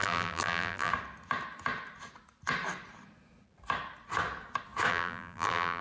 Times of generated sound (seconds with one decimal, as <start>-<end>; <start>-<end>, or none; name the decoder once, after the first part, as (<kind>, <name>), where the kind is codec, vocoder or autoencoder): 0.0-0.9 (vocoder, BigVGAN v2); 4.9-5.8